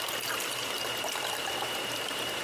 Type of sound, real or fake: fake